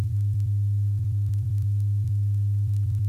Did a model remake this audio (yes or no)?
yes